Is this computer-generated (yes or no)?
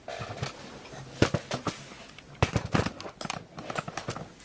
no